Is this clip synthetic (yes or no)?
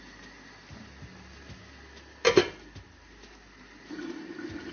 no